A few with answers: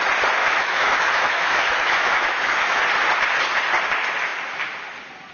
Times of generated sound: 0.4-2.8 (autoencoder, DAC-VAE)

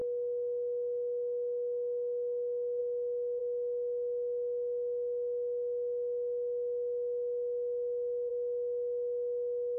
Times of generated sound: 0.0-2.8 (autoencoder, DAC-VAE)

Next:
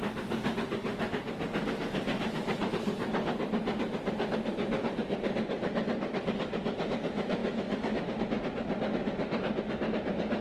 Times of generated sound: 7.4-8.2 (autoencoder, DAC-VAE)

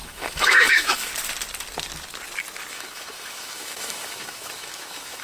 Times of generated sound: 0.0-1.1 (autoencoder, DAC-VAE); 2.7-5.2

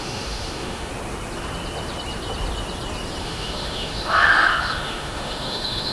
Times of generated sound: 0.0-0.9 (autoencoder, DAC-VAE); 3.2-5.9